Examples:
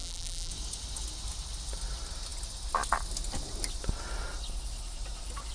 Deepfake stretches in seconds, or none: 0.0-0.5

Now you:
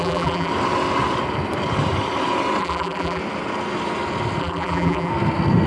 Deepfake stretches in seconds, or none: 0.0-0.5; 2.6-3.2; 4.4-5.1

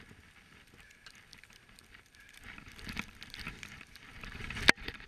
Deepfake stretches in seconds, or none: none

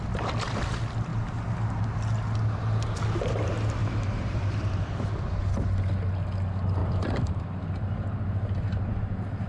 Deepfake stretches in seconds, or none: 3.8-5.5; 6.8-7.4

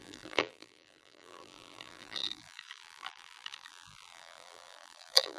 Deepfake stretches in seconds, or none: 0.0-5.4

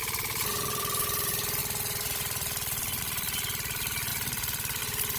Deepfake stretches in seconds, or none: 0.0-4.1; 4.8-5.2

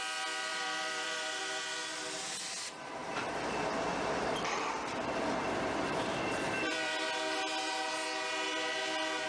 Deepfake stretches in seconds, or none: 0.5-1.4; 3.0-3.5; 3.9-7.1